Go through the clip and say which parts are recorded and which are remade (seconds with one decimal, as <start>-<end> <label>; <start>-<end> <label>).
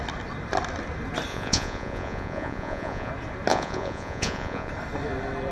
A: 0.0-1.3 recorded; 1.3-3.1 remade; 3.1-3.5 recorded; 3.5-4.7 remade; 4.7-5.5 recorded